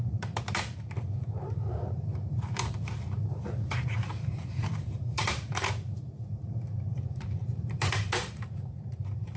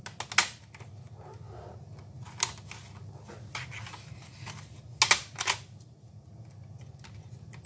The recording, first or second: second